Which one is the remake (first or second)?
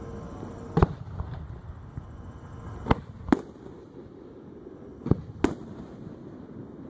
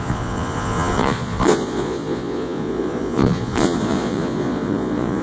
second